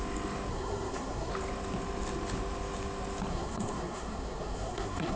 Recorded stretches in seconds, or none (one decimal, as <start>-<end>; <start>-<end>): 0.0-0.5; 1.3-3.3